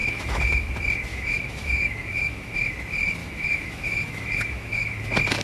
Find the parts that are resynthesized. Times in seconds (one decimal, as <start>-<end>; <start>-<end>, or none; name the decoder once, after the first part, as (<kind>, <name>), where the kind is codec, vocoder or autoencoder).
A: 0.0-0.7 (autoencoder, DAC-VAE); 1.1-2.7; 3.2-5.0

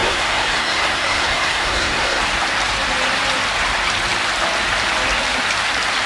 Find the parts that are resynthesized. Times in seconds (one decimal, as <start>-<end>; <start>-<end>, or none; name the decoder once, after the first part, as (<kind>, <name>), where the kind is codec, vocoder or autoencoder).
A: 0.0-2.2 (codec, SNAC)

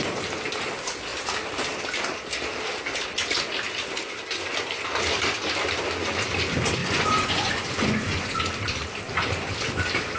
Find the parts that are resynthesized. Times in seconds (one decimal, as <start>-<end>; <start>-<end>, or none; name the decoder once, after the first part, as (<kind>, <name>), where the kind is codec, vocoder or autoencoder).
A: 6.8-8.4 (vocoder, Vocos)

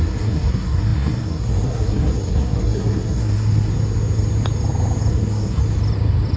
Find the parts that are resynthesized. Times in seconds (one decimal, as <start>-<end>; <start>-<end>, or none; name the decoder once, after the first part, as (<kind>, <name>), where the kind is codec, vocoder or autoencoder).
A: 0.0-3.7 (codec, SNAC); 5.1-5.6

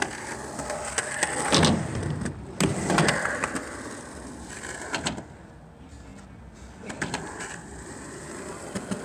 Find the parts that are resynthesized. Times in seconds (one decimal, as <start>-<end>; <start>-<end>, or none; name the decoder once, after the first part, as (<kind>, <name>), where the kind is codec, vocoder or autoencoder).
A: none

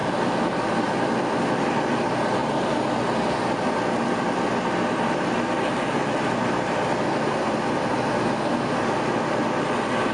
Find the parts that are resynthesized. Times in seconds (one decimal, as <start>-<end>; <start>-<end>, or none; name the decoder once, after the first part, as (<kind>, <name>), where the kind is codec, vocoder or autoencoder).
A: none

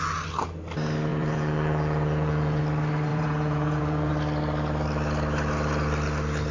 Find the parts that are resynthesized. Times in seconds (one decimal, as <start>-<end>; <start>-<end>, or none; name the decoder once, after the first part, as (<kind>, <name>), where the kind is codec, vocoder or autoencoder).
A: 1.1-2.6 (vocoder, Vocos); 3.1-4.1

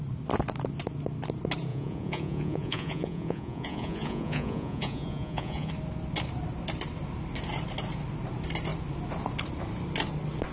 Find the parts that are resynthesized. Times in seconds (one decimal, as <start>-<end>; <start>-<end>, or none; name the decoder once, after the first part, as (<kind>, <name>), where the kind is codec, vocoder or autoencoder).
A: 1.7-5.7 (vocoder, Vocos)